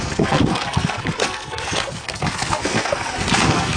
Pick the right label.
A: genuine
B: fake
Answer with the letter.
B